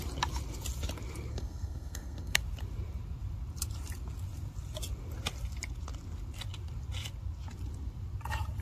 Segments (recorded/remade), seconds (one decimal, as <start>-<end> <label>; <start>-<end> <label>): 0.0-1.3 recorded; 1.3-2.4 remade; 2.4-8.6 recorded